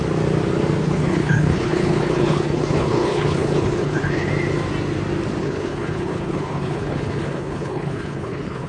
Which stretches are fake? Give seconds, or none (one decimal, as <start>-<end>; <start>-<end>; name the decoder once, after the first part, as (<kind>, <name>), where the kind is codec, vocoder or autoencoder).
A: 0.8-4.3 (codec, HILCodec); 5.4-8.7